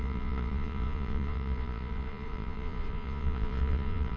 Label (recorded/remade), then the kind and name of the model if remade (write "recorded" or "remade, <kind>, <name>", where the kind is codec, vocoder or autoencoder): remade, vocoder, Vocos